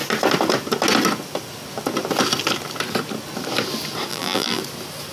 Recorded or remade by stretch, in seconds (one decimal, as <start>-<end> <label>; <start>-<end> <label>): 0.0-4.1 recorded; 4.1-4.6 remade; 4.6-5.1 recorded